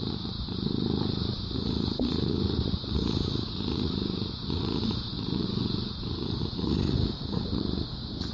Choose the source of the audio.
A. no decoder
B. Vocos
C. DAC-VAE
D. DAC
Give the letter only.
B